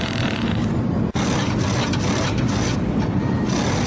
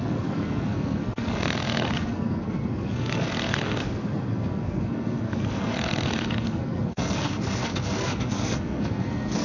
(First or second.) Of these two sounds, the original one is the first